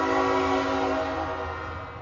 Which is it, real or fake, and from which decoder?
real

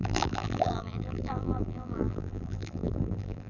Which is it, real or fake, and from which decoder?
fake, vocoder, BigVGAN v2